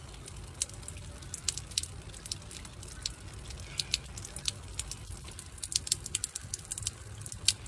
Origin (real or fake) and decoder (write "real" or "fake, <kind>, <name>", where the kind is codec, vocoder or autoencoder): real